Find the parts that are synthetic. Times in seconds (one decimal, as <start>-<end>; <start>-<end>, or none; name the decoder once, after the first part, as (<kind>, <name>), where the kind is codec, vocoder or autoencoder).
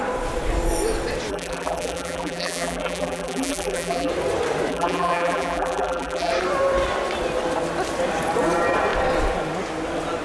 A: 1.3-4.1 (vocoder, BigVGAN v2); 4.7-6.3